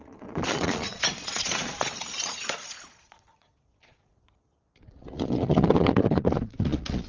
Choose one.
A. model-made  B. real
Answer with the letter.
A